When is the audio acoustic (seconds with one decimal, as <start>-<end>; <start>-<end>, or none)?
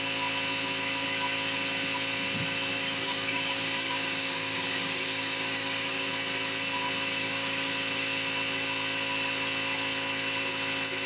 0.0-2.7; 6.1-7.2; 7.7-11.1